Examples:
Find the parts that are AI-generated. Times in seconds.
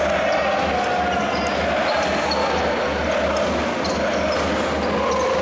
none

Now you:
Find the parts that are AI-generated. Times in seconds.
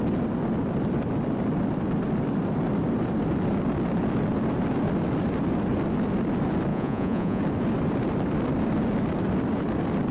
6.7-7.4 (vocoder, Vocos)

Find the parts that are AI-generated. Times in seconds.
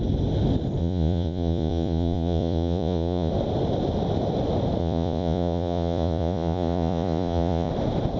0.8-3.3 (vocoder, Vocos); 4.8-7.7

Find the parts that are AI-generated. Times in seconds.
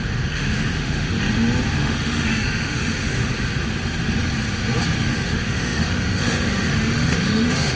0.0-1.1 (autoencoder, DAC-VAE); 1.7-3.3; 5.0-7.8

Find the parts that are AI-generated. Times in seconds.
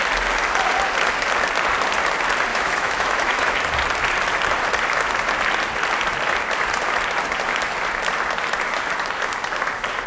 2.5-3.6 (autoencoder, DAC-VAE)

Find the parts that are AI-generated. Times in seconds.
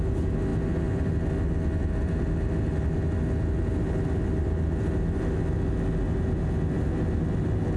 none